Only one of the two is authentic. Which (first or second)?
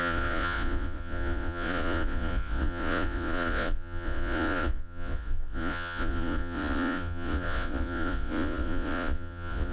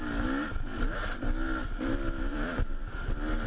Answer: second